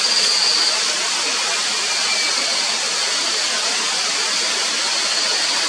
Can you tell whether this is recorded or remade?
recorded